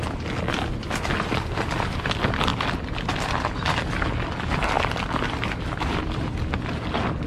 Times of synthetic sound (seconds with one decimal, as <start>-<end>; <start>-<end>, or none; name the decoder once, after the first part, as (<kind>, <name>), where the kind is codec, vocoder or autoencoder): 2.5-4.4 (vocoder, BigVGAN v2)